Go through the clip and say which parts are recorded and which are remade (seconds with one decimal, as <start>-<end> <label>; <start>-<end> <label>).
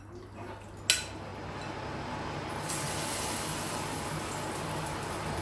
0.0-5.4 recorded